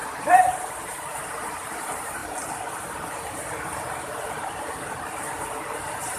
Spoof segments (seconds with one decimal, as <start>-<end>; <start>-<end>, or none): 0.0-6.2